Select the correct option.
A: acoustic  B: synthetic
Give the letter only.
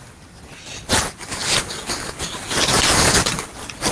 A